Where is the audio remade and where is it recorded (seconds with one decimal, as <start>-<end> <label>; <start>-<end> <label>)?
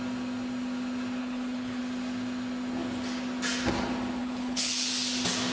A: 0.0-1.2 recorded; 1.2-1.8 remade; 1.8-4.2 recorded; 4.2-4.9 remade; 4.9-5.5 recorded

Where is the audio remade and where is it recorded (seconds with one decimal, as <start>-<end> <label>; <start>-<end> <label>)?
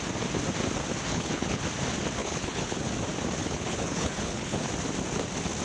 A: 0.0-1.1 recorded; 1.1-1.6 remade; 1.6-2.2 recorded; 2.2-2.9 remade; 2.9-3.4 recorded; 3.4-4.7 remade; 4.7-5.6 recorded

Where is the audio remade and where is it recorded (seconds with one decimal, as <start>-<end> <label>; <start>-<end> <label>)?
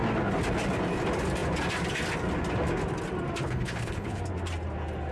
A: 0.0-3.4 recorded; 3.4-4.2 remade; 4.2-5.1 recorded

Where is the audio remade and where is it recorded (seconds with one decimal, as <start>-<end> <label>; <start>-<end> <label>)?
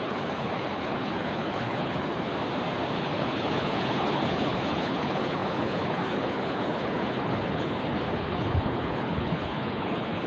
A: 0.0-2.3 remade; 2.3-3.0 recorded; 3.0-10.3 remade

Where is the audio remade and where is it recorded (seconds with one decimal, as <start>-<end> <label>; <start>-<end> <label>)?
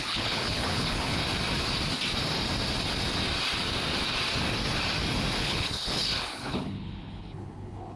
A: 0.0-1.2 remade; 1.2-5.4 recorded; 5.4-8.0 remade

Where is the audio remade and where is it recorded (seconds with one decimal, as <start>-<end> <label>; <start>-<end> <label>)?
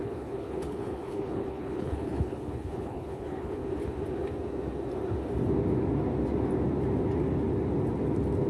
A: 0.0-3.6 remade; 3.6-8.5 recorded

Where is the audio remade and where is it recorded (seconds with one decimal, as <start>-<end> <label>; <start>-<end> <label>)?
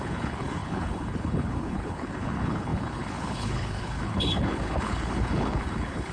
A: 0.0-6.1 remade